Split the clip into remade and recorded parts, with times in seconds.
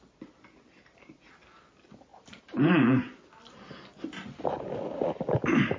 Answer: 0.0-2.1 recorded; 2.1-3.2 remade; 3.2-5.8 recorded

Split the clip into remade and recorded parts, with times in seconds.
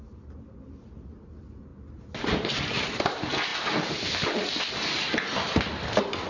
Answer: 0.0-6.3 recorded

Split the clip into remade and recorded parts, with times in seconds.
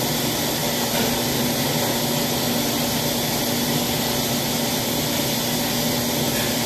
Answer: 0.0-0.6 recorded; 0.6-4.6 remade; 4.6-6.7 recorded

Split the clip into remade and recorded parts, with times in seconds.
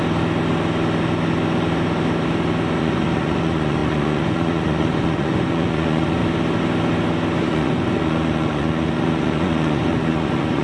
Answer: 0.0-2.8 recorded; 2.8-6.2 remade; 6.2-7.4 recorded; 7.4-10.6 remade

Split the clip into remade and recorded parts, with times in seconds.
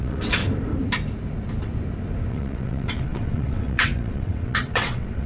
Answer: 0.0-0.4 remade; 0.4-2.3 recorded; 2.3-5.3 remade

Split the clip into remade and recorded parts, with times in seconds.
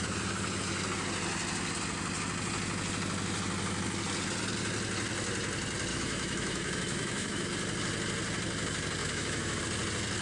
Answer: 0.0-5.9 recorded; 5.9-7.5 remade; 7.5-9.0 recorded; 9.0-9.6 remade; 9.6-10.2 recorded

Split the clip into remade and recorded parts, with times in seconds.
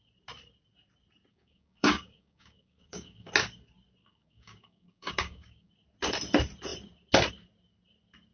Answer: 0.0-1.3 recorded; 1.3-3.3 remade; 3.3-4.0 recorded; 4.0-5.7 remade; 5.7-8.3 recorded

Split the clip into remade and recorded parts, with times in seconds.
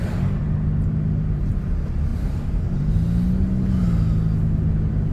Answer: 0.0-5.1 recorded